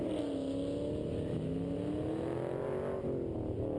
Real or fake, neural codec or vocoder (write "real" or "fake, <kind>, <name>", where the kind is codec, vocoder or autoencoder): real